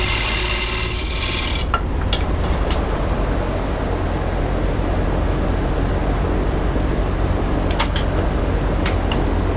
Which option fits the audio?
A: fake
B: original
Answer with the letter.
B